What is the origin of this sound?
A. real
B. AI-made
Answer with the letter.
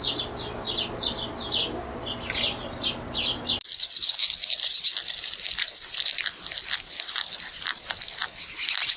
A